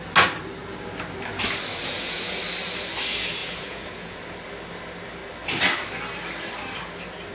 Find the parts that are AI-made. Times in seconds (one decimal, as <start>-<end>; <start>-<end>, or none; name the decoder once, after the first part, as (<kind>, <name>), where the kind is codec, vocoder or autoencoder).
1.7-2.4 (vocoder, Vocos); 3.4-4.2